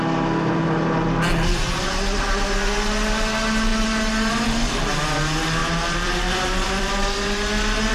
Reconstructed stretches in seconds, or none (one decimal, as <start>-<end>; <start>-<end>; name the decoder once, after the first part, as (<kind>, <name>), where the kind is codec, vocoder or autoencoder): 5.6-7.0 (vocoder, BigVGAN v2)